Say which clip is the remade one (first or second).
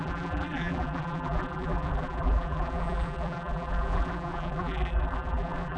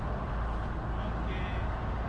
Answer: first